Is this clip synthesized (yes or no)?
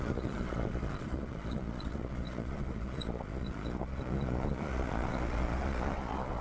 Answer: yes